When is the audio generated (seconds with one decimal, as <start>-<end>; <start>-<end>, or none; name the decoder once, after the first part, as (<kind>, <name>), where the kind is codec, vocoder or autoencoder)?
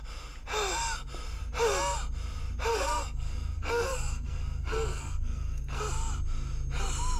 2.7-5.8 (codec, SNAC)